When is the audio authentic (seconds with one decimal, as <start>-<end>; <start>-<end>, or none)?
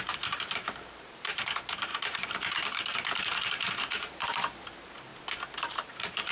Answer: 5.1-5.6